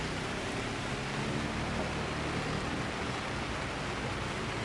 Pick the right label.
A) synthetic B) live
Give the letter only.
B